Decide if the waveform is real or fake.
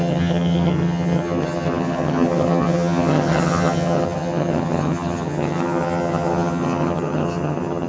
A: fake